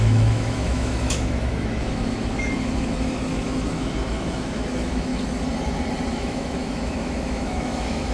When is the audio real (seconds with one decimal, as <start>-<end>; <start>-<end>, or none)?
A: 5.1-6.1